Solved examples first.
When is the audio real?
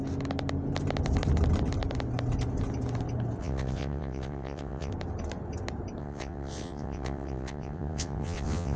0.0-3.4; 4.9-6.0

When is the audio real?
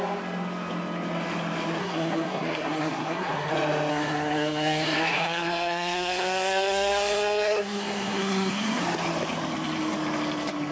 0.0-1.8; 3.5-3.9; 8.8-10.7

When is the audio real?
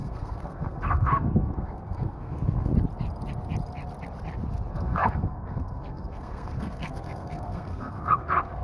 2.7-4.7